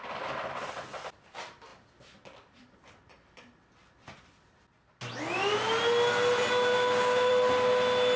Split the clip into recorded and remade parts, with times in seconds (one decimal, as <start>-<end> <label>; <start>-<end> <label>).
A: 0.0-6.7 recorded; 6.7-7.3 remade; 7.3-8.2 recorded